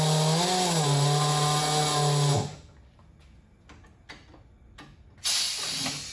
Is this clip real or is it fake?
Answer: real